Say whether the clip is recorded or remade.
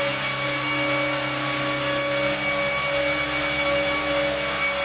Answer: recorded